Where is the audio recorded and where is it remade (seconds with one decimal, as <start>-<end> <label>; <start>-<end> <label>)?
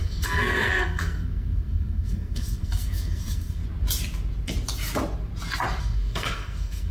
0.0-3.6 remade; 3.6-5.8 recorded; 5.8-6.9 remade